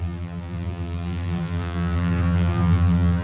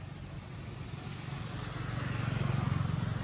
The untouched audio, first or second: second